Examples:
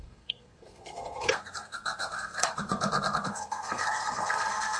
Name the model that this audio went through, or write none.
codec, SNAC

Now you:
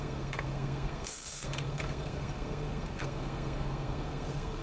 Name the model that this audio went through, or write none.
codec, SNAC